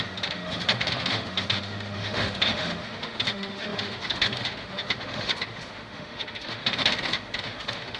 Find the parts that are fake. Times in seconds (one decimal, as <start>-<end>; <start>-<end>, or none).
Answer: 0.0-8.0